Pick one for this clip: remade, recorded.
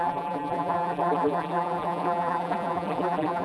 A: remade